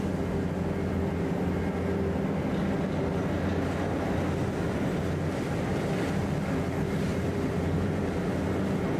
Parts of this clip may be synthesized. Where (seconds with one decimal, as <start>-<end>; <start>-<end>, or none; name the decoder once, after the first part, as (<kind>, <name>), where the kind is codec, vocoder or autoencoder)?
7.1-8.0 (vocoder, BigVGAN v2)